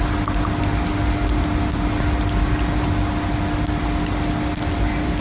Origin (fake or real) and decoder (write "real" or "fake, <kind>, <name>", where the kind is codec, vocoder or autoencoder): real